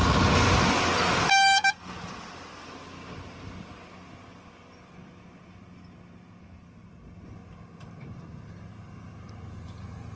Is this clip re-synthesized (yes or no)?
no